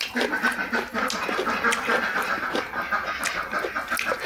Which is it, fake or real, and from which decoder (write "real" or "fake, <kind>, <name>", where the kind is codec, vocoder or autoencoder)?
real